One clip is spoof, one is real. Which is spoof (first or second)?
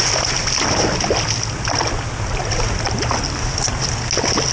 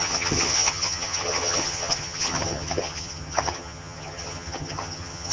second